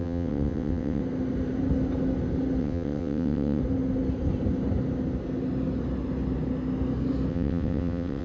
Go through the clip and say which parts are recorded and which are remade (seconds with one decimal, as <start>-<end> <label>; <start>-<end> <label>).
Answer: 0.0-1.0 remade; 1.0-2.6 recorded; 2.6-3.6 remade; 3.6-7.3 recorded; 7.3-8.2 remade